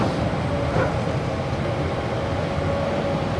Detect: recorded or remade recorded